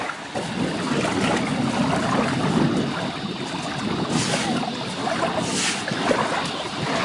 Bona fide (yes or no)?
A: yes